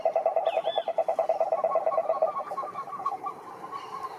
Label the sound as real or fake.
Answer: real